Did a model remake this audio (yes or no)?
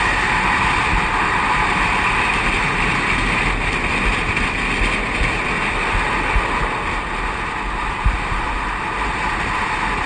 no